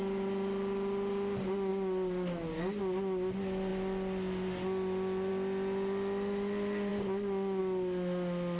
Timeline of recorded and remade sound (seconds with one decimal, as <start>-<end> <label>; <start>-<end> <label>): 0.0-8.6 recorded